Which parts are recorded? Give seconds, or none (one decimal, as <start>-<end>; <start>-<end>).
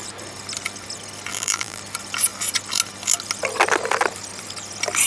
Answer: 0.0-1.3; 1.8-5.1